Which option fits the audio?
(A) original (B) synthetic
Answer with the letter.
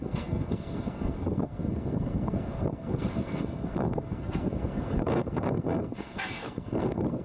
B